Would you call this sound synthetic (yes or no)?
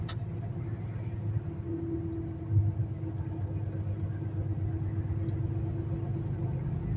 no